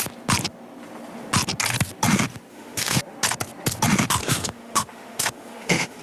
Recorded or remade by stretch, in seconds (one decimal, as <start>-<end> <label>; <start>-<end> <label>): 0.0-2.5 recorded; 2.5-3.0 remade; 3.0-4.2 recorded; 4.2-6.0 remade